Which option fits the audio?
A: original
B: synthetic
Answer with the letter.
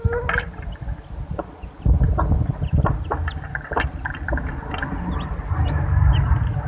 B